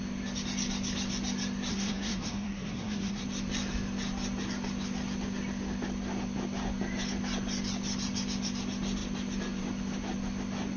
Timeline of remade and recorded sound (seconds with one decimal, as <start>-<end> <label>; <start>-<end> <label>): 0.0-1.7 recorded; 1.7-3.2 remade; 3.2-10.8 recorded